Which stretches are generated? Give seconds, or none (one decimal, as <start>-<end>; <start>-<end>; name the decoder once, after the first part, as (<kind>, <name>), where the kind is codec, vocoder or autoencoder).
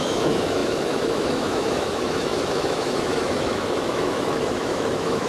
0.0-5.3 (autoencoder, DAC-VAE)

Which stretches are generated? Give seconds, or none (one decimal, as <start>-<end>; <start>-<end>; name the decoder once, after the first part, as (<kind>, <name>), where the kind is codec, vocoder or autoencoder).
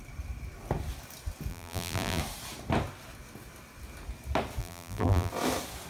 1.5-2.2 (vocoder, BigVGAN v2); 4.6-5.3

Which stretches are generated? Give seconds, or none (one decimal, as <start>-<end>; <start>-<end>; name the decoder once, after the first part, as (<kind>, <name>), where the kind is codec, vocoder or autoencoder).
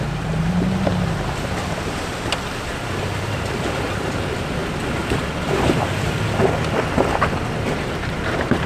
0.0-4.6 (vocoder, BigVGAN v2); 7.5-8.7